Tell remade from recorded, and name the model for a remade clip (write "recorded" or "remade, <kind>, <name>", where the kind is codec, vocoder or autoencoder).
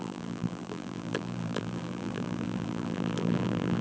remade, vocoder, BigVGAN v2